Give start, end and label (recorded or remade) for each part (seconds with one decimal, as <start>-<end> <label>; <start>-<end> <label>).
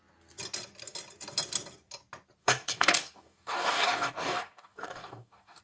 0.0-2.4 recorded; 2.4-5.6 remade